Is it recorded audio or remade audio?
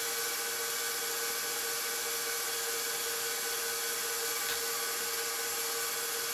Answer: recorded